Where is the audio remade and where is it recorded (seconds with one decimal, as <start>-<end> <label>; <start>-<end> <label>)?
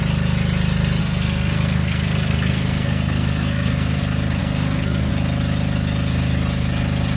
0.0-1.0 recorded; 1.0-4.0 remade; 4.0-4.4 recorded; 4.4-5.1 remade; 5.1-7.2 recorded